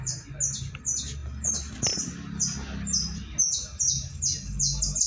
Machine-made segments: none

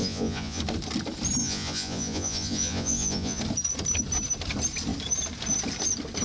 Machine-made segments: 0.0-0.6 (vocoder, Vocos); 1.4-3.4

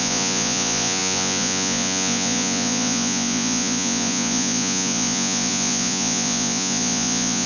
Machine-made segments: 0.0-7.5 (vocoder, Vocos)

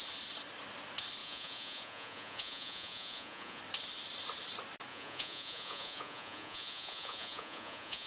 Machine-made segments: 1.2-3.6 (vocoder, Vocos); 4.9-8.1

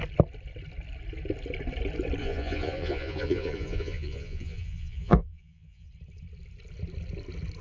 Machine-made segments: 2.2-5.9 (vocoder, Vocos)